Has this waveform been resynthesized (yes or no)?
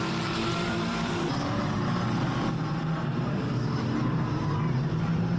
yes